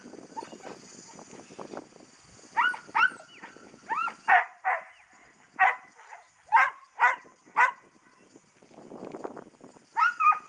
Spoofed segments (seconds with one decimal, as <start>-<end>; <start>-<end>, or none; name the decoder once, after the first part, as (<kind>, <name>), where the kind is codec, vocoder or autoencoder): none